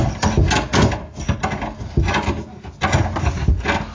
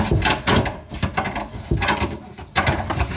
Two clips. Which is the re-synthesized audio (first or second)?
second